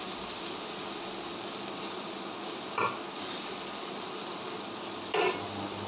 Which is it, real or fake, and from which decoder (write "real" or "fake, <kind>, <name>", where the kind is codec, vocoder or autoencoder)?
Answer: real